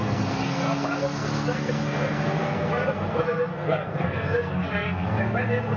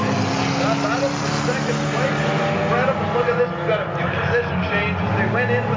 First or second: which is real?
second